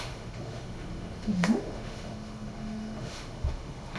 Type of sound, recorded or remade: remade